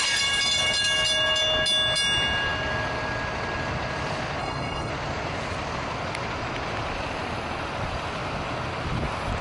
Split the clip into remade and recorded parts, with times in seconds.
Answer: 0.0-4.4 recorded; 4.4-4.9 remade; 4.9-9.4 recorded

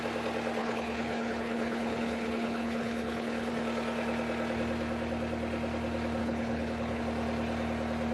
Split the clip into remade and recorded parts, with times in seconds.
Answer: 0.0-0.6 recorded; 0.6-3.5 remade; 3.5-6.2 recorded; 6.2-7.0 remade; 7.0-8.1 recorded

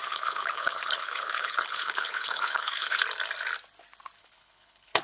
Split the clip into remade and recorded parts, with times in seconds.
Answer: 0.0-3.0 remade; 3.0-4.2 recorded; 4.2-5.0 remade

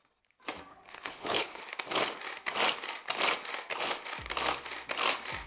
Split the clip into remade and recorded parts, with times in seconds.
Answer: 0.0-0.7 recorded; 0.7-1.6 remade; 1.6-5.5 recorded

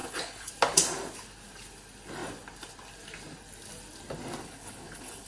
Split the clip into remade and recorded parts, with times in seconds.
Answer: 0.0-0.5 remade; 0.5-4.4 recorded; 4.4-5.3 remade

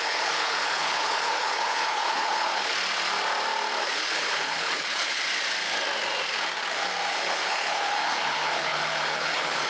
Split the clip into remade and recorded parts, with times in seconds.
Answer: 0.0-2.7 remade; 2.7-3.8 recorded; 3.8-5.2 remade; 5.2-7.1 recorded; 7.1-9.7 remade